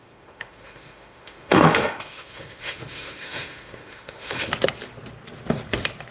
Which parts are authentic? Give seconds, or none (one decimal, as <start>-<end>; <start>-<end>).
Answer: 4.5-6.1